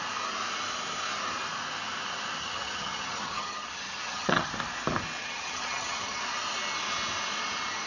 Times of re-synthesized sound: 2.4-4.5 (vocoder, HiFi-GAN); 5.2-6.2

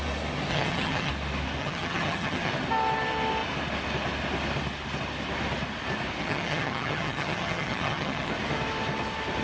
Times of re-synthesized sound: 0.5-1.1 (vocoder, HiFi-GAN); 1.6-2.5; 6.2-8.3

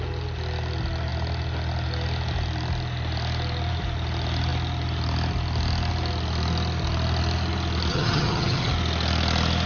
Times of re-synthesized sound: 7.9-8.7 (vocoder, HiFi-GAN)